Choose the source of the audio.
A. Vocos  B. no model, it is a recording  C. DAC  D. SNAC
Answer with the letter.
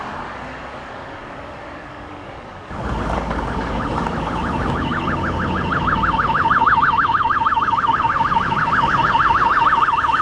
C